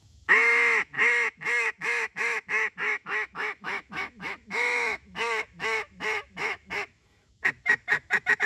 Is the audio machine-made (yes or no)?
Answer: yes